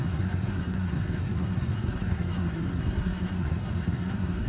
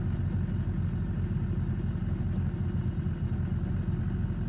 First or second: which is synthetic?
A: first